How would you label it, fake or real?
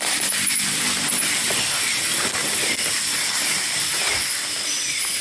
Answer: fake